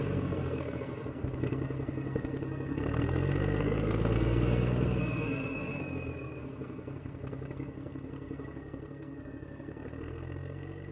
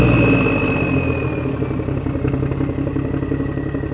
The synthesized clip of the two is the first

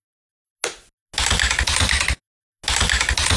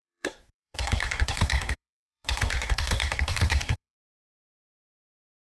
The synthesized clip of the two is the second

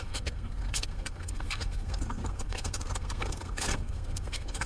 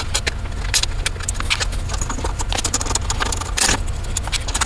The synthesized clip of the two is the first